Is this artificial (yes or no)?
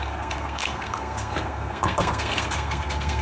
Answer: yes